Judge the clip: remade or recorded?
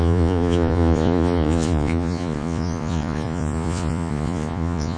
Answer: remade